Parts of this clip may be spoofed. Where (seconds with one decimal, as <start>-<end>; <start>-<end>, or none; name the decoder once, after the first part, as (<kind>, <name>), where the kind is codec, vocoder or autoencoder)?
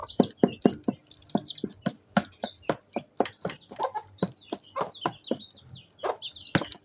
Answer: none